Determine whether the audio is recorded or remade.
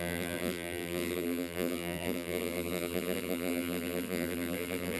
remade